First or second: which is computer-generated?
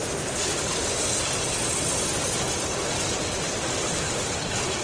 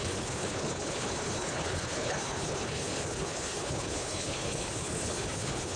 second